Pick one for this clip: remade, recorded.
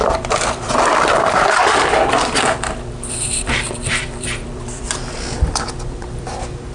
remade